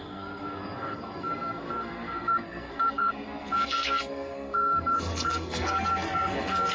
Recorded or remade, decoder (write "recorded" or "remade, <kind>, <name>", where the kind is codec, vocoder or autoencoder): remade, codec, SNAC